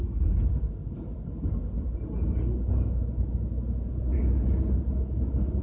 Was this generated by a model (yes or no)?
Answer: no